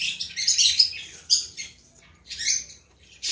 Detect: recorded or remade recorded